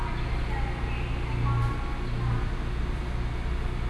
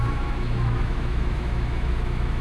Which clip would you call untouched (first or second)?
first